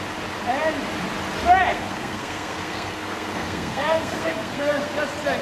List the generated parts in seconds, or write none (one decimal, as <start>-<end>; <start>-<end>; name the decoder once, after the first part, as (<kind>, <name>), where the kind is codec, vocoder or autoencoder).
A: 1.7-4.9 (codec, SNAC)